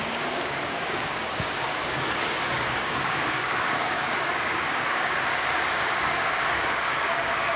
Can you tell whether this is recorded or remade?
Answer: remade